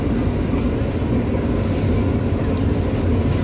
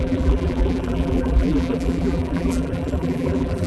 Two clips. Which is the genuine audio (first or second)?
first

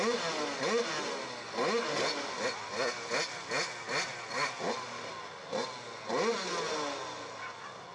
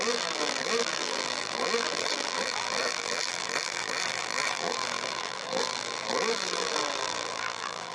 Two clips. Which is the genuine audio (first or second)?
first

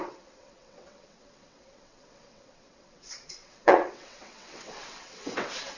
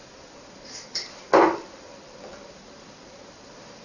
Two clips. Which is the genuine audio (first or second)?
second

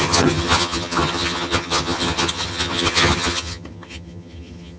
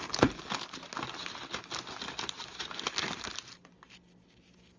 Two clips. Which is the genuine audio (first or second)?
second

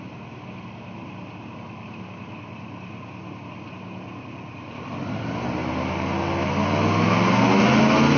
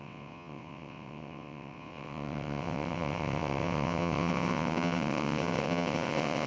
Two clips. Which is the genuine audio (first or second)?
first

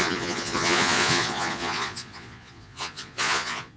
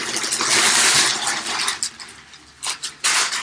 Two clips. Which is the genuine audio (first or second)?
second